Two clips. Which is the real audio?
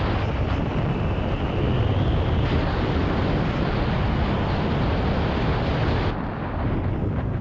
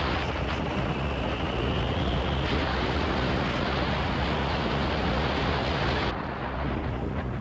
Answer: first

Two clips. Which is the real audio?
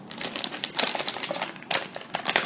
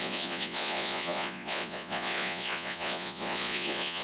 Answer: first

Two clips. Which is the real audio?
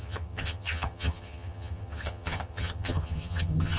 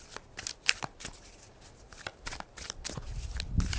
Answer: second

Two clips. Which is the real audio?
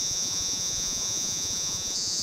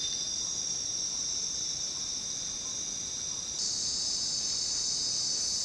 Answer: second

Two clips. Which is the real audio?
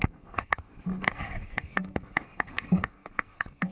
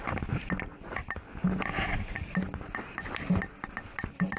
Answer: second